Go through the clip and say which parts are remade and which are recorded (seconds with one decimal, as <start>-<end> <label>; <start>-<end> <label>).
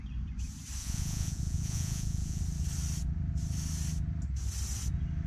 0.0-0.8 recorded; 0.8-2.4 remade; 2.4-5.3 recorded